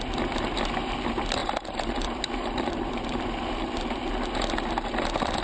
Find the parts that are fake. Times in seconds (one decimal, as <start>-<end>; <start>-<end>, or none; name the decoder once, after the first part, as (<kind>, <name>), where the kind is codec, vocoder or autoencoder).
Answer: 1.4-4.1 (vocoder, BigVGAN v2)